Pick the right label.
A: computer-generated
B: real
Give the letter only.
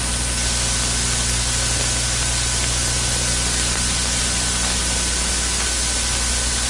B